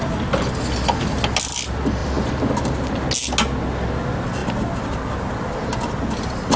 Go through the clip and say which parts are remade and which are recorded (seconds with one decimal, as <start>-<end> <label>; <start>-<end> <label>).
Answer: 0.0-6.6 recorded